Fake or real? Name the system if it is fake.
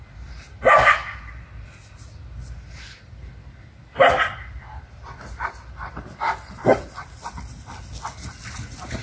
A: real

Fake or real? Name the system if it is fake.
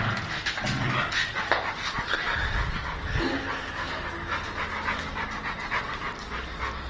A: real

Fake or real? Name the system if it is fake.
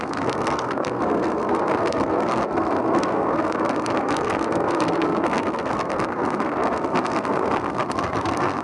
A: fake, codec, SNAC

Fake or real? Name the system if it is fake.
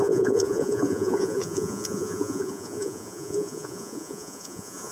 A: fake, vocoder, Vocos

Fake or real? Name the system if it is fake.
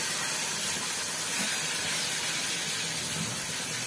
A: fake, vocoder, BigVGAN v2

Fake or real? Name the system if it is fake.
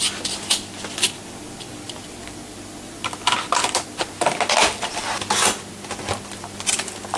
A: real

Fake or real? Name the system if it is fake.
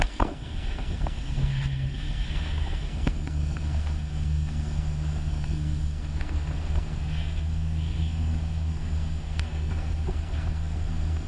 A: fake, codec, SNAC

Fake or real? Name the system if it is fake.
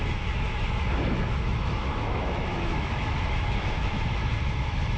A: fake, autoencoder, DAC-VAE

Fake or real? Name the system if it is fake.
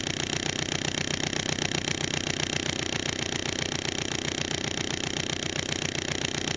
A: real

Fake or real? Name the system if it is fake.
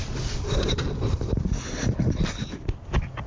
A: real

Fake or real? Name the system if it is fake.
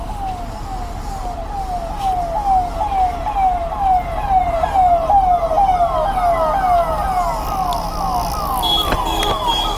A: real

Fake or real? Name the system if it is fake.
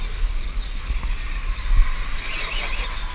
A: real